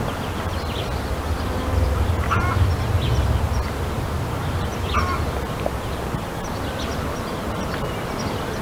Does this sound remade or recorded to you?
recorded